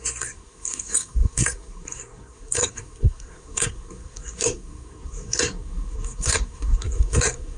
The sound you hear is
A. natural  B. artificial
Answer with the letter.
B